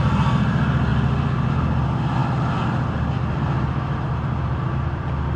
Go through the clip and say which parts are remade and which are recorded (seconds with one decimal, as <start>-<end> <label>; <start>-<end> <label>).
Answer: 0.0-0.9 recorded; 0.9-1.5 remade; 1.5-5.4 recorded